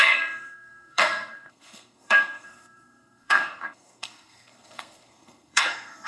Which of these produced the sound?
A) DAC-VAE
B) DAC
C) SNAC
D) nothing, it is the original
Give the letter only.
C